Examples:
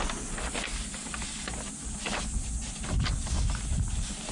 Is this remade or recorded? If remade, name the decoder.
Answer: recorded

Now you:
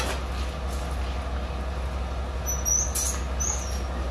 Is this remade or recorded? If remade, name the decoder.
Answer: recorded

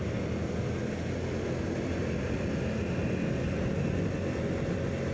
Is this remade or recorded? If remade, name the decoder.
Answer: recorded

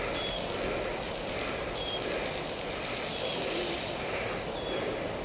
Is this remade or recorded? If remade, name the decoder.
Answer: recorded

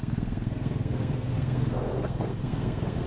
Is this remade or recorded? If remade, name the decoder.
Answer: remade, codec, SNAC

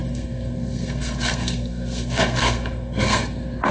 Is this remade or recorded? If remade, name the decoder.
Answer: remade, codec, SNAC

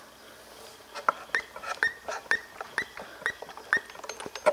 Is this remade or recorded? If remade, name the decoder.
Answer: recorded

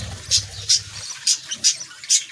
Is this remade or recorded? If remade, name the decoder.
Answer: recorded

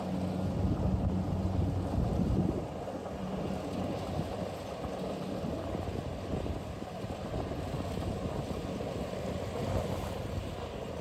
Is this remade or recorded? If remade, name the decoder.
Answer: recorded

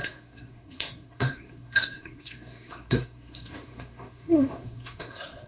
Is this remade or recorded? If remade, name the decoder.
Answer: remade, codec, SNAC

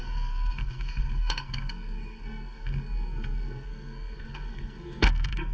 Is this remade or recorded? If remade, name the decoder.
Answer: remade, codec, SNAC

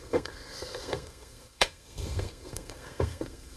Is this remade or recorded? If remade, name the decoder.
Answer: remade, codec, SNAC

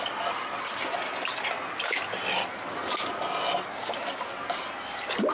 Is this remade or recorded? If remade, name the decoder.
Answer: recorded